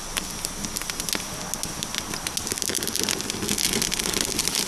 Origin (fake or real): real